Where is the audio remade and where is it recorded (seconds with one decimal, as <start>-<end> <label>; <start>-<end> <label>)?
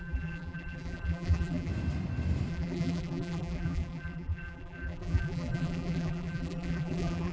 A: 0.0-1.7 remade; 1.7-2.5 recorded; 2.5-7.3 remade